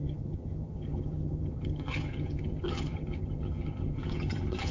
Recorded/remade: remade